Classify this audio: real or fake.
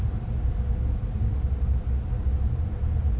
real